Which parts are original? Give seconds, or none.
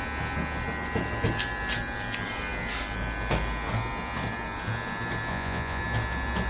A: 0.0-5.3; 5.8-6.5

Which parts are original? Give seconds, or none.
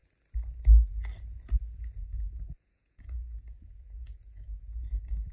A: 0.0-2.0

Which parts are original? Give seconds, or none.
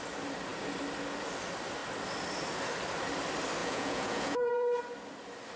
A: 0.0-3.6; 4.8-5.6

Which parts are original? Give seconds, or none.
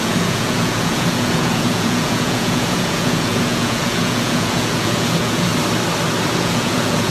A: 5.5-6.4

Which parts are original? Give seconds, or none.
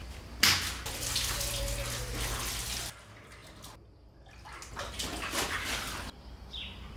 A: 0.0-7.0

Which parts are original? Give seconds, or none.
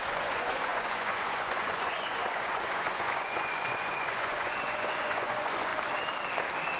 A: 5.7-6.8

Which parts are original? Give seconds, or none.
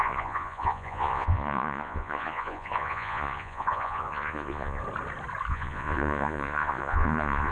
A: 4.8-5.5